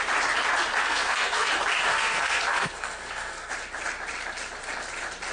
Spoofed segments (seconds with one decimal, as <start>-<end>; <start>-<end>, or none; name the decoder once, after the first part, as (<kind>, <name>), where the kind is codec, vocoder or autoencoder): 0.8-1.5 (codec, SNAC); 1.9-3.5